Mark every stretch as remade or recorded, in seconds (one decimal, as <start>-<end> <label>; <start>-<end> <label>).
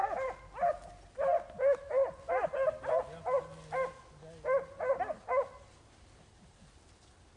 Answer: 0.0-7.4 recorded